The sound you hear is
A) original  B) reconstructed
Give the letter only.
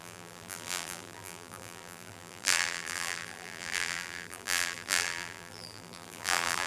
B